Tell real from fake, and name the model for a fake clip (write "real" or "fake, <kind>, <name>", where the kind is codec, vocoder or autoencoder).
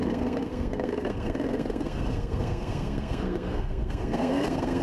fake, codec, SNAC